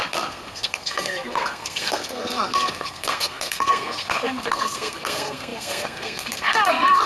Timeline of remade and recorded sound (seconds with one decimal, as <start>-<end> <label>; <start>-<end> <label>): 0.0-7.1 remade